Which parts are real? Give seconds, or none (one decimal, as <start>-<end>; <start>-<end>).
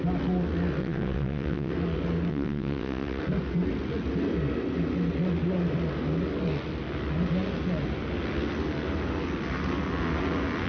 0.0-0.8; 1.7-2.3; 3.2-10.7